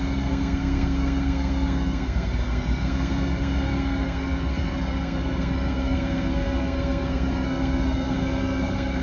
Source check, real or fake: fake